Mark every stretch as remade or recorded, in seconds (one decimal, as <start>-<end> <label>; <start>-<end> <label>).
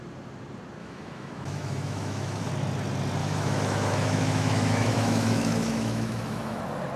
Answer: 0.0-0.8 recorded; 0.8-2.5 remade; 2.5-3.2 recorded; 3.2-6.6 remade; 6.6-7.0 recorded